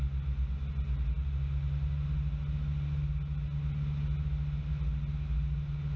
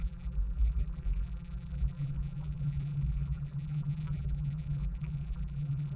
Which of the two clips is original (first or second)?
first